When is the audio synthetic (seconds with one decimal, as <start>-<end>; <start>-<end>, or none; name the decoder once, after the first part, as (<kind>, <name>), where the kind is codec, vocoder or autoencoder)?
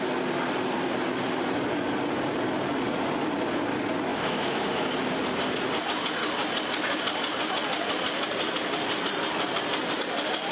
4.1-4.9 (autoencoder, DAC-VAE)